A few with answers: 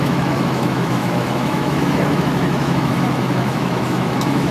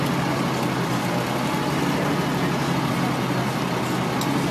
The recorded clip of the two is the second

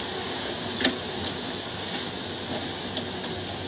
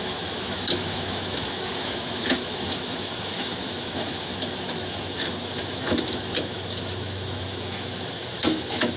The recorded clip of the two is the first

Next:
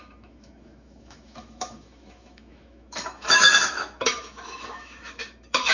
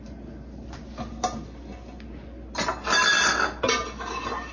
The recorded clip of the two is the second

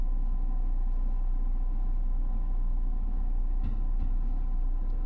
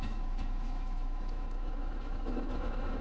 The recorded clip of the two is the first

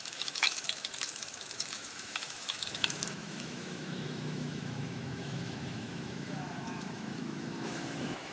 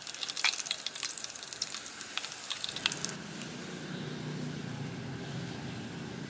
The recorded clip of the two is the second